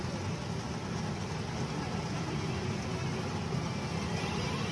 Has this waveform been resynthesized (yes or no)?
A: no